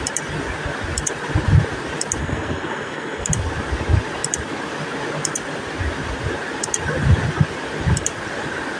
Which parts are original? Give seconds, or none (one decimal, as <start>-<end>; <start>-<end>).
0.0-2.2; 3.3-8.8